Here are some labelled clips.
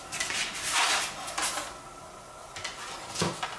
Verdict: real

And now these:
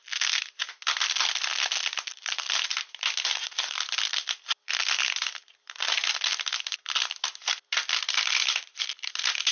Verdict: real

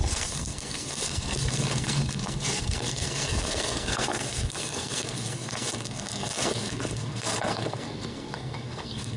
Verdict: fake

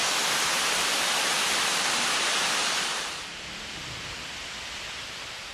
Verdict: fake